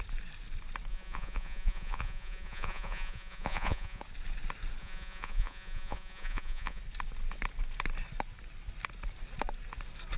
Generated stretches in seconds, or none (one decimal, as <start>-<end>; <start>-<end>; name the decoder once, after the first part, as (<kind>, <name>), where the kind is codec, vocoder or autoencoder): 0.9-4.0 (vocoder, Vocos); 4.8-6.8